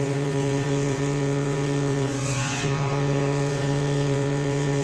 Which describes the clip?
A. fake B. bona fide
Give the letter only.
A